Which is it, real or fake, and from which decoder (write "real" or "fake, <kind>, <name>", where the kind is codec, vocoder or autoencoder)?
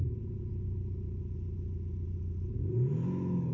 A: real